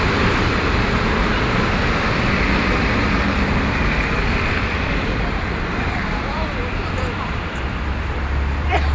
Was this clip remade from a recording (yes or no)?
yes